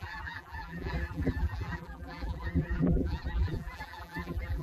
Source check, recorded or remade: remade